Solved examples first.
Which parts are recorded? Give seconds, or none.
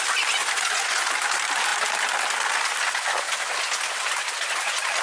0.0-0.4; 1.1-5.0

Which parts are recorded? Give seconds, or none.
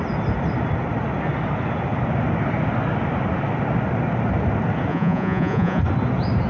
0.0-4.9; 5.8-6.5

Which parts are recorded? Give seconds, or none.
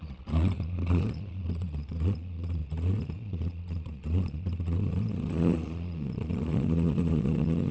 none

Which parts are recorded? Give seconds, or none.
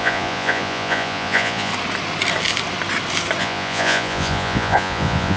1.7-3.4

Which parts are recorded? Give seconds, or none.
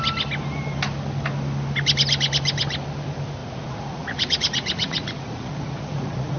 0.0-3.4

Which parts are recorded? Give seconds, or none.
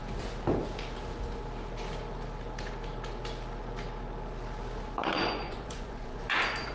0.0-5.0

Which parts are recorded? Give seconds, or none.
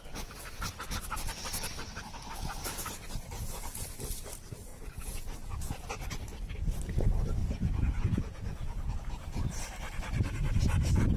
0.0-4.7; 5.9-7.4; 8.9-11.2